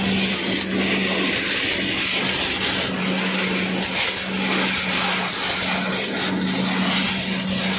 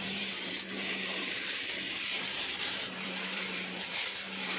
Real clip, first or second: first